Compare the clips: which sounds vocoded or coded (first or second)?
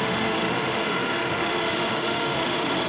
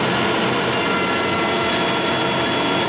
first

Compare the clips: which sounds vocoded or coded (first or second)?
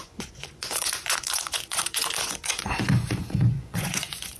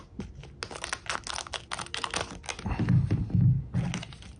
first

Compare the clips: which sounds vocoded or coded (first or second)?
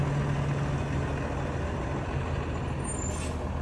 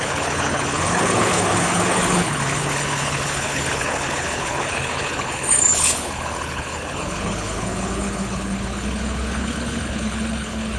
second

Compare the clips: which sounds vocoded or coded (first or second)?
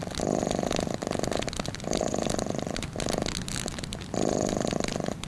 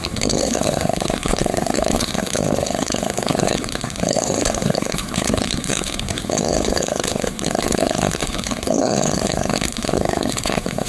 second